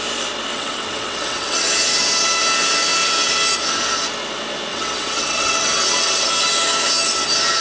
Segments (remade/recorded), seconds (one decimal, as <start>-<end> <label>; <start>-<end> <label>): 0.0-0.5 recorded; 0.5-1.7 remade; 1.7-4.7 recorded; 4.7-6.3 remade; 6.3-7.6 recorded